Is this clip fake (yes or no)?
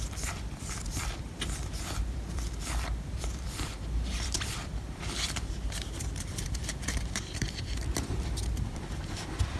yes